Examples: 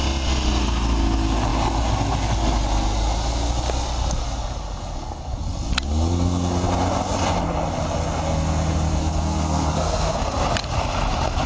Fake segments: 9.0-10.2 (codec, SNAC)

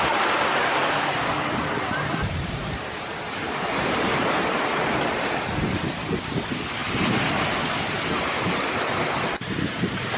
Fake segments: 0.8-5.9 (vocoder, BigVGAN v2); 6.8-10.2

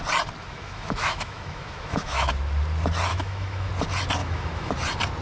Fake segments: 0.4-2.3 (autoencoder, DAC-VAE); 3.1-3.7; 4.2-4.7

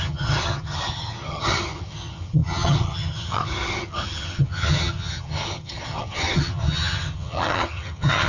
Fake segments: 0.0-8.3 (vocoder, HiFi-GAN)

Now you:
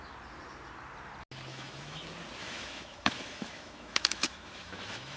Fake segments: 1.5-2.0 (autoencoder, DAC-VAE); 2.4-5.2

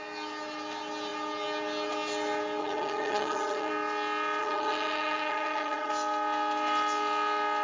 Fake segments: 2.6-3.7 (vocoder, HiFi-GAN); 4.4-5.9